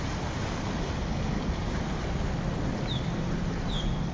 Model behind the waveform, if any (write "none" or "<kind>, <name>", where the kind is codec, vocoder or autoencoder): none